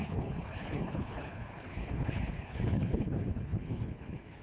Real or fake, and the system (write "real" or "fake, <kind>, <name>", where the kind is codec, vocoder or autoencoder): fake, codec, HILCodec